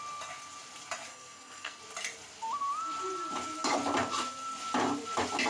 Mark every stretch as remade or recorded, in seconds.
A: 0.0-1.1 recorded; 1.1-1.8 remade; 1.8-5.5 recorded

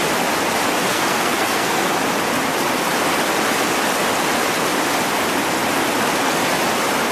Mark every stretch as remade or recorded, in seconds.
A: 0.0-0.9 recorded; 0.9-1.9 remade; 1.9-7.1 recorded

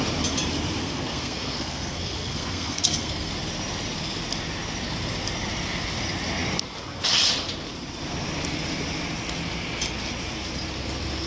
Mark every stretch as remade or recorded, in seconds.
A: 0.0-0.8 recorded; 0.8-3.3 remade; 3.3-11.3 recorded